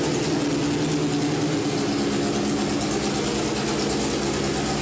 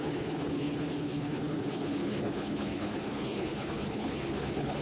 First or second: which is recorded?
first